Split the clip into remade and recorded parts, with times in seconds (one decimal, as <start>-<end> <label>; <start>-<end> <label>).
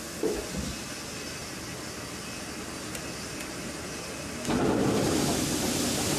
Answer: 0.0-6.2 recorded